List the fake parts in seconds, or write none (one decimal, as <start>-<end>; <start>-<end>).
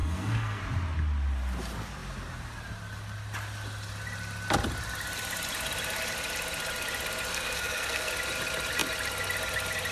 0.0-0.6; 7.3-8.1